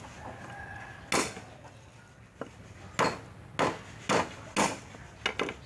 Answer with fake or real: real